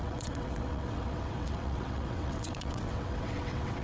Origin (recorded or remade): remade